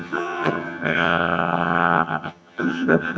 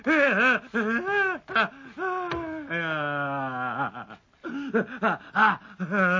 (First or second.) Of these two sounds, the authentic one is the second